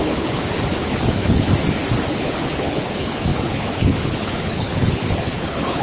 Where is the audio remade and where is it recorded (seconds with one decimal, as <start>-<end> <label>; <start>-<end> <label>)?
0.0-1.5 remade; 1.5-2.1 recorded; 2.1-5.8 remade